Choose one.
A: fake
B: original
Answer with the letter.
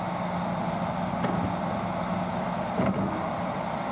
B